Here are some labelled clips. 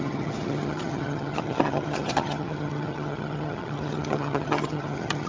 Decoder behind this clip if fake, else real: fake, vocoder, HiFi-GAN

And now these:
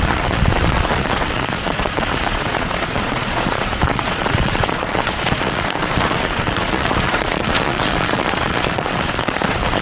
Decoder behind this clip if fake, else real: fake, vocoder, Vocos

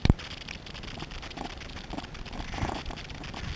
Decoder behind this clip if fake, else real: real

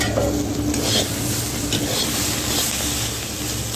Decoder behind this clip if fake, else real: real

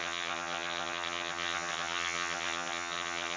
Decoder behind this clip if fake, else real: fake, vocoder, HiFi-GAN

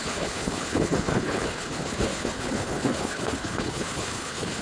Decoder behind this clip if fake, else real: fake, codec, HILCodec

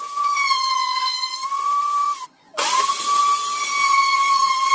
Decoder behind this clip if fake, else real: fake, vocoder, Vocos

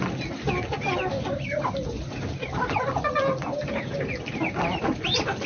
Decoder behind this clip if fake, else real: real